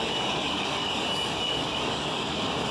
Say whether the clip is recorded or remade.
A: remade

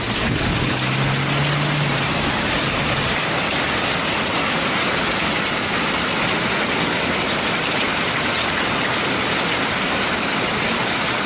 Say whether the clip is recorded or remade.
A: recorded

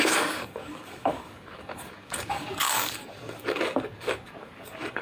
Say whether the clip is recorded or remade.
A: remade